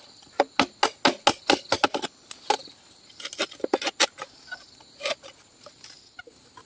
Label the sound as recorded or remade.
recorded